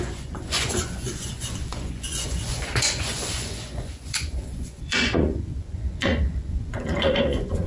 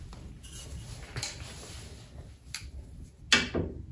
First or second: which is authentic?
second